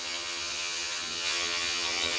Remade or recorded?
remade